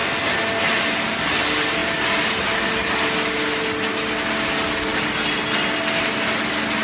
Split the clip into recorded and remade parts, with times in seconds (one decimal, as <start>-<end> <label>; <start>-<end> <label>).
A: 0.0-6.8 recorded